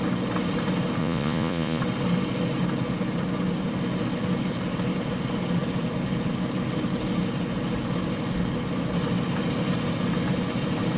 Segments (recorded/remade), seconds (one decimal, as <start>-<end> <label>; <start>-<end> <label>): 0.0-1.0 recorded; 1.0-1.8 remade; 1.8-11.0 recorded